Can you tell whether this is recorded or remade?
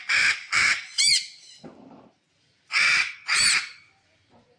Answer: remade